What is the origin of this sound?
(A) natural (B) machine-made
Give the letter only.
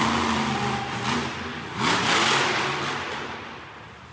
A